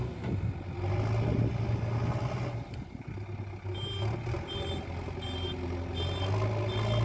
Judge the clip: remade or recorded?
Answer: recorded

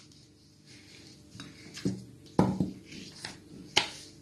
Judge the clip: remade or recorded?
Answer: recorded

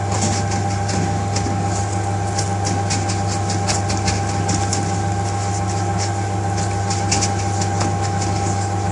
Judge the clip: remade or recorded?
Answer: recorded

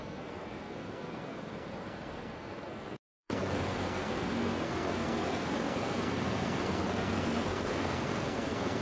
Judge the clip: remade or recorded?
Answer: remade